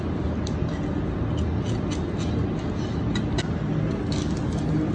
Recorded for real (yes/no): yes